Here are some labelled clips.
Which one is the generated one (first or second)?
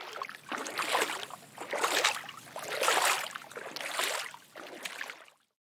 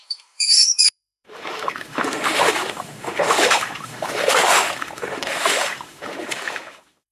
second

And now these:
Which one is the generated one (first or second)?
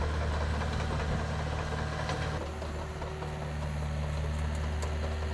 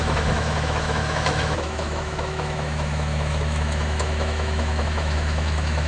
second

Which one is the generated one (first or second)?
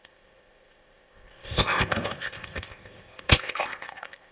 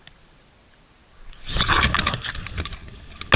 first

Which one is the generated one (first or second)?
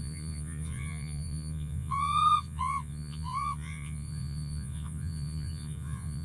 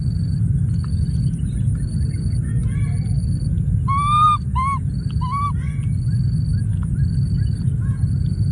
first